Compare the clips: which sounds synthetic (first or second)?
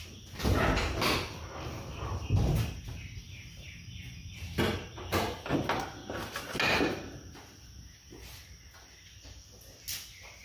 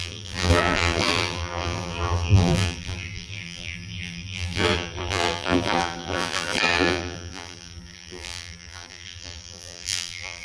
second